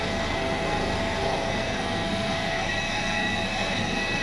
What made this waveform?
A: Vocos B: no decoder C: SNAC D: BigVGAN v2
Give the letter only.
C